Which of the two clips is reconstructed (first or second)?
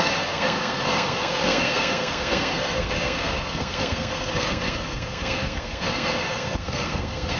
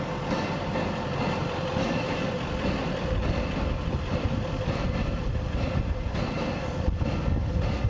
first